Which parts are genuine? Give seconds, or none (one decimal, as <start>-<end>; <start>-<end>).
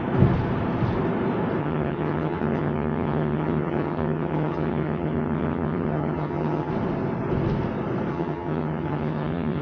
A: 0.0-1.6; 6.7-8.1